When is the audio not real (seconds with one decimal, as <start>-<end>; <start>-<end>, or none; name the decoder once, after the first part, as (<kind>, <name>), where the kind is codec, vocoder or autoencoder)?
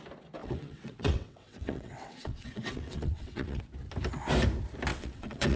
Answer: 0.4-3.6 (vocoder, WaveNeXt); 4.9-5.6